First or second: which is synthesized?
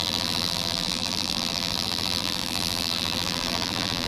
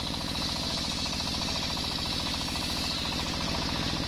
first